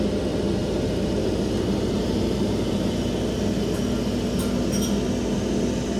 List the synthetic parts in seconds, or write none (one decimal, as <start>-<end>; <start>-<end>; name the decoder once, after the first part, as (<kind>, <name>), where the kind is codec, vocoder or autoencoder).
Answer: 0.6-3.1 (vocoder, BigVGAN v2)